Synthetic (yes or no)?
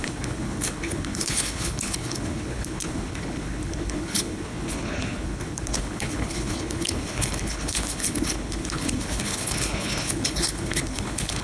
yes